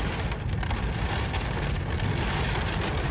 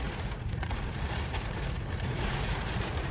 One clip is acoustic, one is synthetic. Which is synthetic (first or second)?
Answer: second